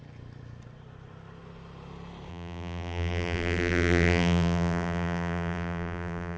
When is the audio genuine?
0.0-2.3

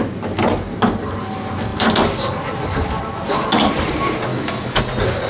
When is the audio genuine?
0.0-4.3; 4.8-5.3

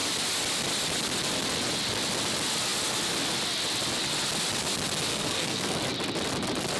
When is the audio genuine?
0.0-5.1; 5.8-6.8

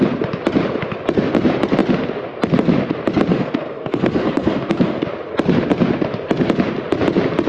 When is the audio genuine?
0.0-3.3; 5.0-7.5

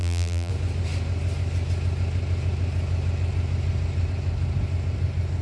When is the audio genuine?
0.5-5.4

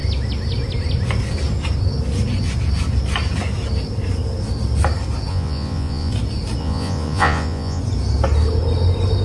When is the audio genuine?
0.0-5.3; 6.1-6.6; 7.8-9.2